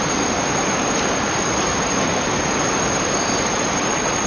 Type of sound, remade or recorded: remade